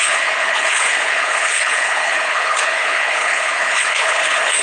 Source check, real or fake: fake